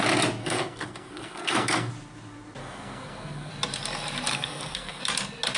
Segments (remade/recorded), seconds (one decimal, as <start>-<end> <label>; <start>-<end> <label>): 0.0-0.4 recorded; 0.4-1.9 remade; 1.9-2.6 recorded; 2.6-3.5 remade; 3.5-4.3 recorded; 4.3-5.0 remade; 5.0-5.6 recorded

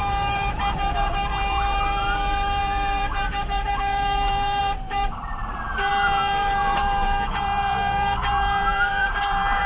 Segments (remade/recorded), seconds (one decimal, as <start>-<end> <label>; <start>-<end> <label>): 0.0-9.7 remade